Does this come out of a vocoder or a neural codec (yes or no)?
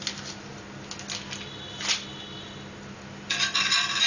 no